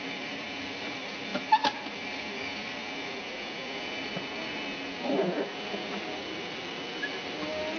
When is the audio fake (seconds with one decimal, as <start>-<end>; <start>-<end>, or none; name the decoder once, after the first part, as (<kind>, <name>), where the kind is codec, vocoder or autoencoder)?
0.0-1.3 (vocoder, BigVGAN v2); 6.0-7.8